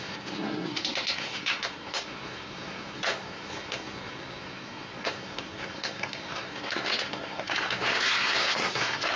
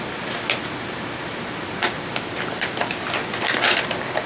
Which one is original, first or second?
second